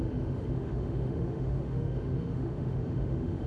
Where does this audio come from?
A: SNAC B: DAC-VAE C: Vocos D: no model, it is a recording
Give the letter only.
B